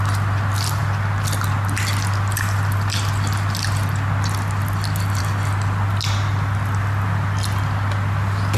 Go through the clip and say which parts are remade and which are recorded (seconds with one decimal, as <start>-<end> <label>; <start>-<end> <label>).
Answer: 0.0-8.6 recorded